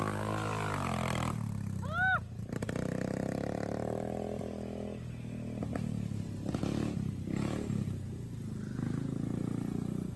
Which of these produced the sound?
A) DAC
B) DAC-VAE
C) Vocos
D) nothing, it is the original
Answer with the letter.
D